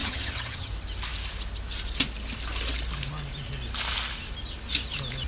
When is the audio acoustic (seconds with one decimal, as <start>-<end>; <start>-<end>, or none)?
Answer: 0.7-5.3